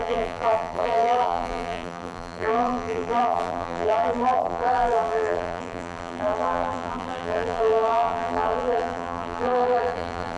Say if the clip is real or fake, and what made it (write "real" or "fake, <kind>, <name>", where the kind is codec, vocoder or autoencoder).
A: fake, vocoder, BigVGAN v2